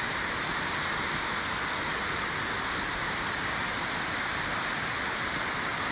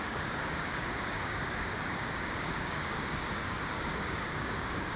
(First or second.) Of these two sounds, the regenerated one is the second